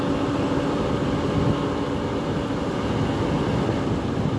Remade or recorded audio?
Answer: recorded